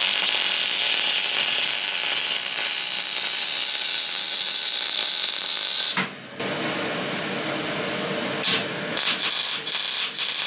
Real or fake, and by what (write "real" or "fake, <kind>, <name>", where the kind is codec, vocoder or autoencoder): real